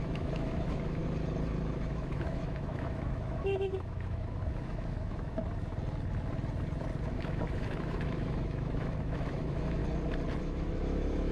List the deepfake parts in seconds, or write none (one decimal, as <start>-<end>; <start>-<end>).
0.0-1.0; 1.6-5.4; 7.0-9.8; 10.4-11.3

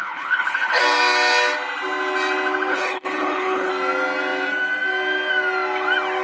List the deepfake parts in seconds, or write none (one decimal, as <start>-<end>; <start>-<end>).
0.0-0.8; 2.7-3.7

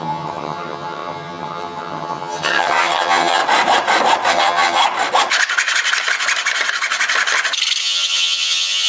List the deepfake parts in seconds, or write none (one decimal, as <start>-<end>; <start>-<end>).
0.0-3.4; 4.3-4.8; 7.8-8.9

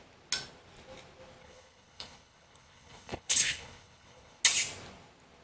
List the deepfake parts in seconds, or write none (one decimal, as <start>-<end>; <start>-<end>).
1.4-4.4

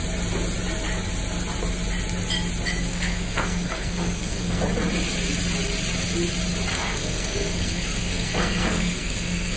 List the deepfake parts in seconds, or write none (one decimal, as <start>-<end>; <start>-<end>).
2.9-4.6; 6.7-9.6

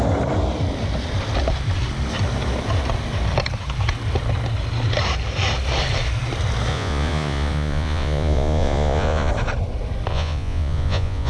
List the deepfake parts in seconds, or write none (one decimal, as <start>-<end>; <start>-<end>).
6.7-9.3; 10.1-11.3

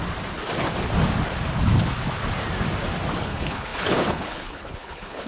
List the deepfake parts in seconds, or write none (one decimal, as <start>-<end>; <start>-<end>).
3.2-5.3

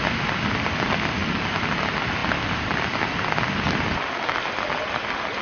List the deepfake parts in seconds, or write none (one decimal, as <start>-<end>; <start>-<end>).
none